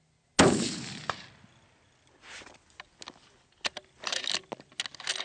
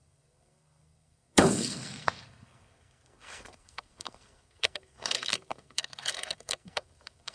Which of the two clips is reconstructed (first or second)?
second